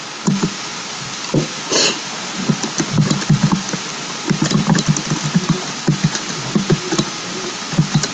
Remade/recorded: recorded